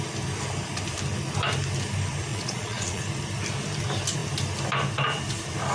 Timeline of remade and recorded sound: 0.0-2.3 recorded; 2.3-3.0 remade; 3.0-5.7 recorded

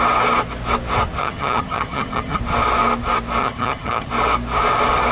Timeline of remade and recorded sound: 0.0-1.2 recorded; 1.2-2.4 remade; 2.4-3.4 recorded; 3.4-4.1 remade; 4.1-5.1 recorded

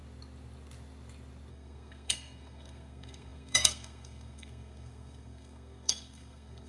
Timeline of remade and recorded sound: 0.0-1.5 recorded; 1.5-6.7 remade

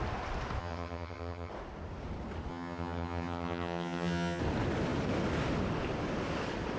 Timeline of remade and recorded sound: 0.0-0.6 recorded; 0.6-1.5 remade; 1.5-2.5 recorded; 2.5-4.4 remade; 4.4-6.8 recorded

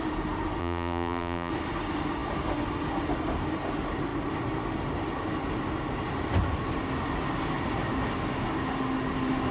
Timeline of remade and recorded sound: 0.0-0.6 recorded; 0.6-1.5 remade; 1.5-9.5 recorded

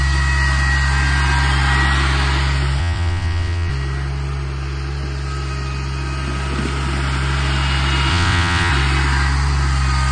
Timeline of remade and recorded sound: 0.0-2.8 recorded; 2.8-3.7 remade; 3.7-8.1 recorded; 8.1-8.7 remade; 8.7-10.1 recorded